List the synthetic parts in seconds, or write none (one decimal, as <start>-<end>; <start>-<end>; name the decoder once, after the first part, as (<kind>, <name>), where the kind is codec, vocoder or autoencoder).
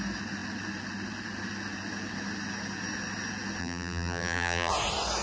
3.6-4.7 (vocoder, BigVGAN v2)